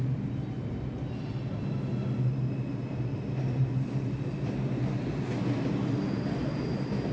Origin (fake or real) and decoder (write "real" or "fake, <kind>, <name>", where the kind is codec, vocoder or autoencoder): real